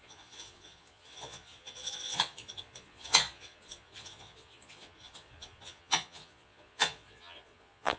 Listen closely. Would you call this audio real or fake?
fake